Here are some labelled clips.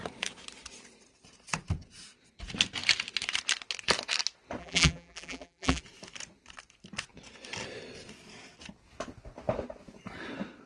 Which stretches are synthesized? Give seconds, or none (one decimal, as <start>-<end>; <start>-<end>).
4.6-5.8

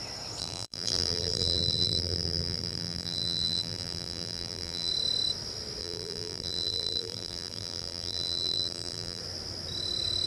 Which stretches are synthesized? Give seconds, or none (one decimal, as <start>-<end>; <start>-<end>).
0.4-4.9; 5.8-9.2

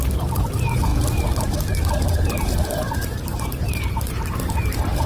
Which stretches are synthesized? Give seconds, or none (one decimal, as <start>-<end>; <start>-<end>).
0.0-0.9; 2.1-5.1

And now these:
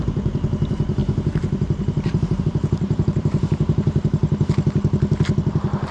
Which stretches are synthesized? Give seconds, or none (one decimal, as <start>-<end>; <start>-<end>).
0.0-4.2

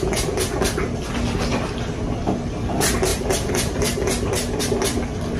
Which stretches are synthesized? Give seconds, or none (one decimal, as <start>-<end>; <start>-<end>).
3.1-4.6

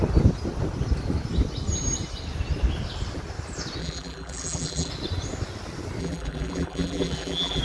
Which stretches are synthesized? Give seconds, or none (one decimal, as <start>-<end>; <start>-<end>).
3.8-4.9; 6.0-7.6

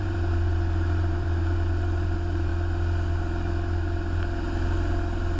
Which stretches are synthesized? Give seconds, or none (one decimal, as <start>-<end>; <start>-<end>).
0.0-2.5